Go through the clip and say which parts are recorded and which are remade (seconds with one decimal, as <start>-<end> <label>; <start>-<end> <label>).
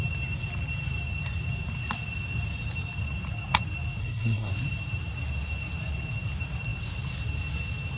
0.0-4.0 recorded; 4.0-4.5 remade; 4.5-8.0 recorded